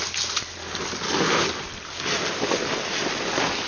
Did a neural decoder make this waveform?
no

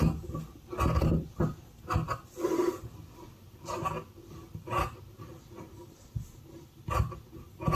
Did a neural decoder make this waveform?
no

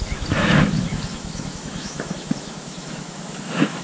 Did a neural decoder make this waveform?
yes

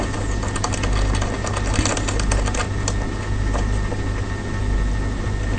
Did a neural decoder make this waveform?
no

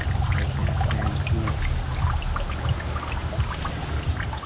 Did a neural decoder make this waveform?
no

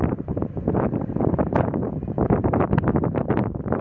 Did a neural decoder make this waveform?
yes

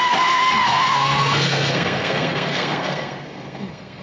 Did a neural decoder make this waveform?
yes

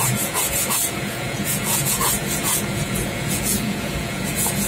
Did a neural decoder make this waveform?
yes